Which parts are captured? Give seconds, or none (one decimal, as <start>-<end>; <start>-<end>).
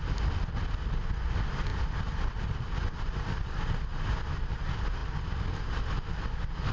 0.0-1.7; 4.3-6.7